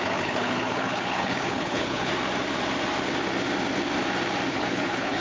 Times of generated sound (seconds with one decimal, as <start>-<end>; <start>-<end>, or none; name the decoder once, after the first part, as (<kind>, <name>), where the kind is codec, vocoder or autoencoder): 0.0-2.1 (codec, HILCodec); 4.5-5.2